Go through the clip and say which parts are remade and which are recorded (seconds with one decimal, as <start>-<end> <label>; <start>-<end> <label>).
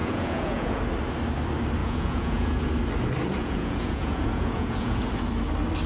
0.0-0.8 remade; 0.8-1.8 recorded; 1.8-2.6 remade; 2.6-3.4 recorded; 3.4-5.1 remade; 5.1-5.9 recorded